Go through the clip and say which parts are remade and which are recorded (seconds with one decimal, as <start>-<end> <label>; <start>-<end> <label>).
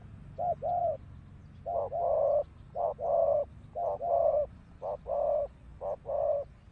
0.0-0.8 recorded; 0.8-1.4 remade; 1.4-4.3 recorded; 4.3-6.7 remade